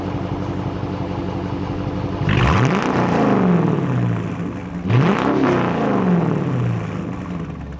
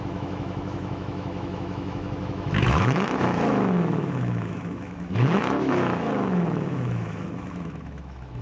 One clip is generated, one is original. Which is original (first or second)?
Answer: first